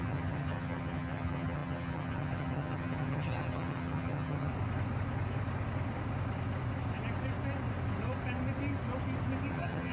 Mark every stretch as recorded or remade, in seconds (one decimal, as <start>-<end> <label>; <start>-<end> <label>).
0.0-4.5 remade; 4.5-9.5 recorded; 9.5-9.9 remade